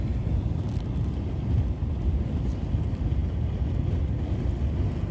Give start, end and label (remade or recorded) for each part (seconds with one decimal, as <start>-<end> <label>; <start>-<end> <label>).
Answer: 0.0-5.1 recorded